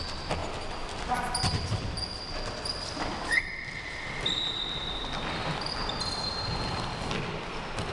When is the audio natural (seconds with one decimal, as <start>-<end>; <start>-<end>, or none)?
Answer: 0.0-2.7; 7.1-7.9